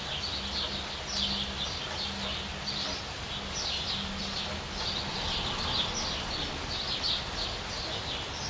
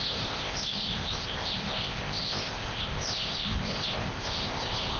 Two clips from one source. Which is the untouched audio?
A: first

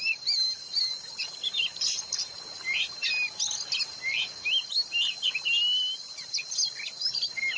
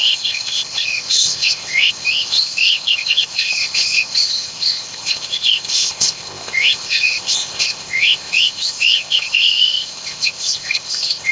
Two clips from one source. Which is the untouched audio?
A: first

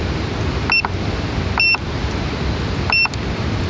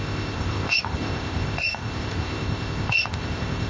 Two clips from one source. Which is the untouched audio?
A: first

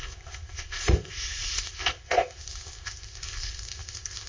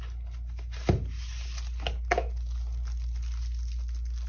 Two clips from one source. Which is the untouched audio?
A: second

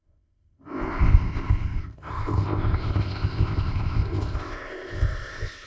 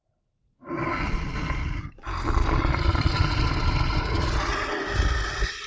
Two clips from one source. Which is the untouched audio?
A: second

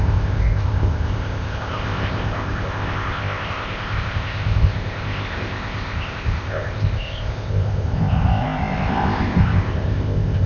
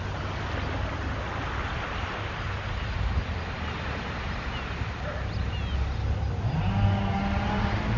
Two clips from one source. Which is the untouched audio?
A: second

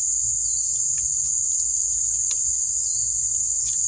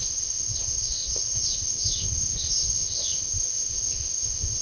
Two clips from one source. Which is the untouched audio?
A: first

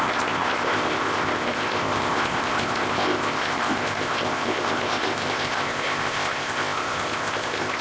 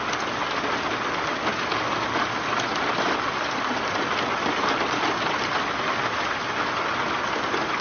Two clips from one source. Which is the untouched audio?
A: second